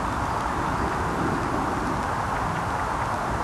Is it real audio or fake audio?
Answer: real